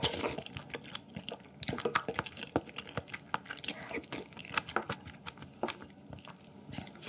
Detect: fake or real real